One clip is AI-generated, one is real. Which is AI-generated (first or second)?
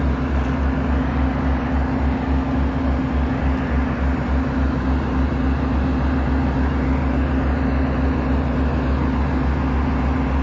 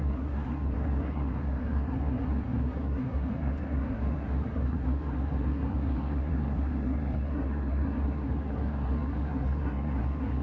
second